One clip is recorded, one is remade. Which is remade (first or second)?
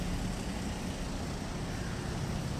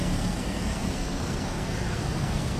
second